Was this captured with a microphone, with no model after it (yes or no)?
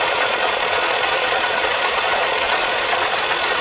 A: no